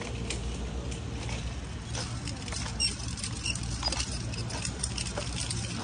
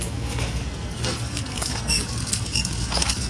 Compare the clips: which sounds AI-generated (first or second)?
second